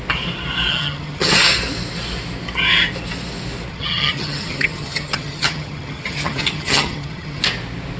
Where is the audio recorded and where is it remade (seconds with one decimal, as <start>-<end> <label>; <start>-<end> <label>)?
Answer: 0.0-0.7 recorded; 0.7-1.3 remade; 1.3-3.7 recorded; 3.7-7.4 remade; 7.4-8.0 recorded